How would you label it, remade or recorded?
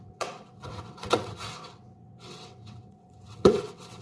remade